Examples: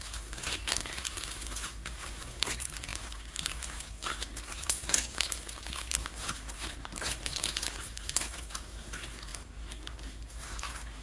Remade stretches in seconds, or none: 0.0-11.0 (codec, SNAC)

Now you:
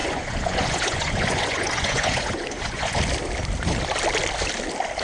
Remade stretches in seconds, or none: 0.0-3.0 (vocoder, Vocos)

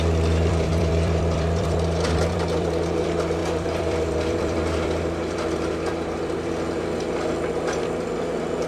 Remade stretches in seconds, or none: 0.0-8.7 (vocoder, BigVGAN v2)